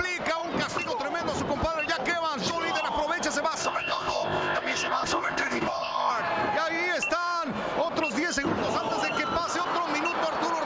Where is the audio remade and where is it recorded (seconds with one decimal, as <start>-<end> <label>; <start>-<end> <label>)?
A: 0.0-3.6 recorded; 3.6-6.1 remade; 6.1-10.7 recorded

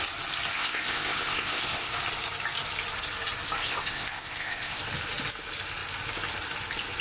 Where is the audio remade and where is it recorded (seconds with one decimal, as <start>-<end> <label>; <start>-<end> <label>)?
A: 0.0-0.5 recorded; 0.5-1.9 remade; 1.9-3.6 recorded; 3.6-4.8 remade; 4.8-7.0 recorded